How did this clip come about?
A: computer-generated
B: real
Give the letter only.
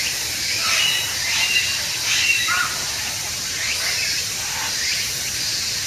B